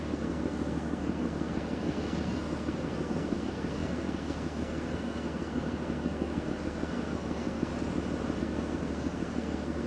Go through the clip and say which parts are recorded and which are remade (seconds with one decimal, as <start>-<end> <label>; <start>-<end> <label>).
0.0-7.7 remade; 7.7-8.4 recorded; 8.4-9.9 remade